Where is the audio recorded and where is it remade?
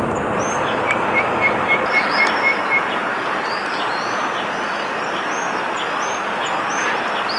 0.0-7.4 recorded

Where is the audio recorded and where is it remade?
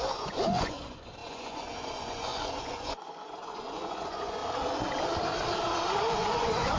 0.0-4.4 remade; 4.4-6.1 recorded; 6.1-6.8 remade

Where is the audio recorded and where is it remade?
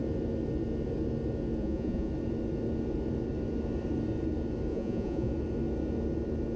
0.0-1.6 recorded; 1.6-2.1 remade; 2.1-4.7 recorded; 4.7-5.3 remade; 5.3-6.6 recorded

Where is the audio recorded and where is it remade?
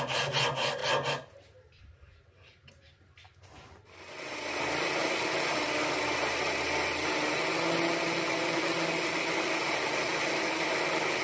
0.0-11.2 recorded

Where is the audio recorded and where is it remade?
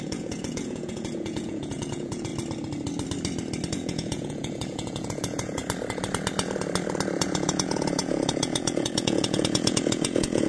0.0-2.3 remade; 2.3-3.7 recorded; 3.7-5.6 remade; 5.6-7.2 recorded; 7.2-10.5 remade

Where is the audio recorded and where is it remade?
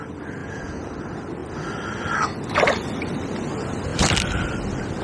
0.0-0.4 recorded; 0.4-0.9 remade; 0.9-5.0 recorded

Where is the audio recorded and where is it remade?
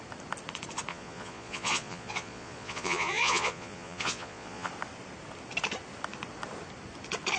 0.0-0.9 recorded; 0.9-4.7 remade; 4.7-7.4 recorded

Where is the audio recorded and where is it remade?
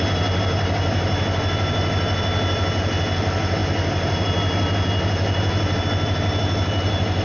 0.0-7.2 recorded